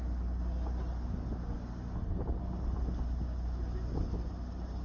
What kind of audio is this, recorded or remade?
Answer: recorded